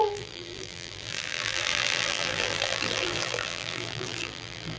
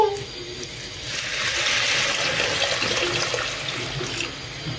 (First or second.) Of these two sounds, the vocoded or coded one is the first